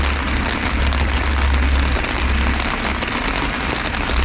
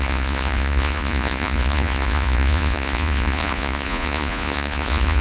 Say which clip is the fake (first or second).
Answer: second